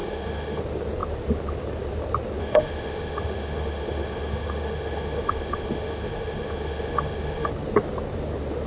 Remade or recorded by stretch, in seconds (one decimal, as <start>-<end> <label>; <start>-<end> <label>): 0.0-0.6 remade; 0.6-2.4 recorded; 2.4-7.5 remade; 7.5-8.7 recorded